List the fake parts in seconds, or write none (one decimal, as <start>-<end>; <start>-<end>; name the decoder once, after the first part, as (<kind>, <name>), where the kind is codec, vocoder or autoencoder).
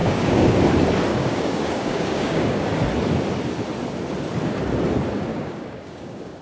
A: 0.0-0.6 (codec, DAC); 1.1-2.7; 5.3-6.4